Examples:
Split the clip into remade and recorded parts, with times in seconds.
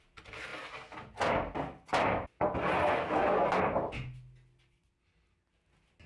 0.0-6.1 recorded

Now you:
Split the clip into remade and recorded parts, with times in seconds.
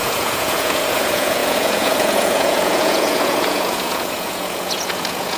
0.0-5.4 remade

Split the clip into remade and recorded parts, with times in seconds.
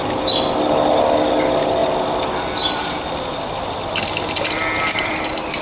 0.0-5.6 recorded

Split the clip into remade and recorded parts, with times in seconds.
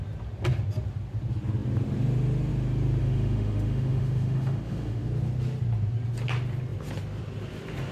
0.0-3.0 recorded; 3.0-5.1 remade; 5.1-7.9 recorded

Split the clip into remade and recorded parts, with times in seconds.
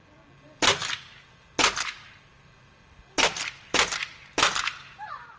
0.0-5.4 recorded